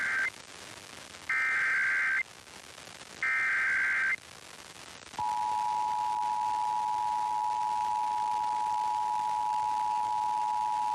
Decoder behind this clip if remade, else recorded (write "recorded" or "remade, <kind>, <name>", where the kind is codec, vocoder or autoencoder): recorded